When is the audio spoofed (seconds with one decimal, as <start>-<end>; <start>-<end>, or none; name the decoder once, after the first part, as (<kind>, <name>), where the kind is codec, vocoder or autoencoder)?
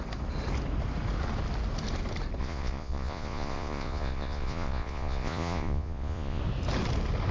2.4-6.4 (vocoder, Vocos)